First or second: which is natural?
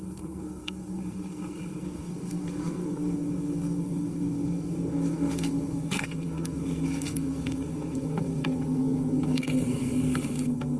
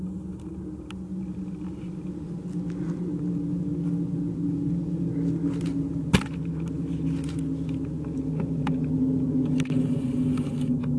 second